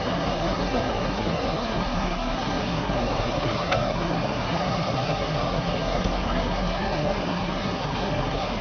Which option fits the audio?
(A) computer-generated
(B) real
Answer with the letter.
A